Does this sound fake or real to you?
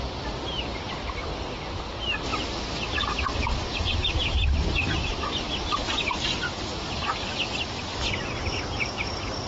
real